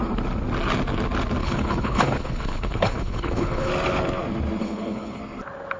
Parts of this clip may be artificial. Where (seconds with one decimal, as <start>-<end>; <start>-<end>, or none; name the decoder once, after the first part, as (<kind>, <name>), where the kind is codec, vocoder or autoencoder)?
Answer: 1.4-3.7 (codec, HILCodec); 4.6-5.2